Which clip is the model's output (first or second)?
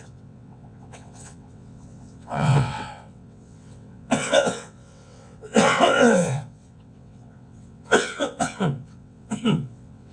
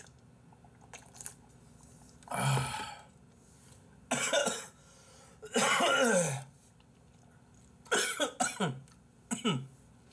first